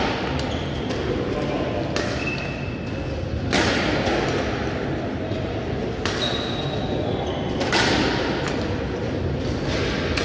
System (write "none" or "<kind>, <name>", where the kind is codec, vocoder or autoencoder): none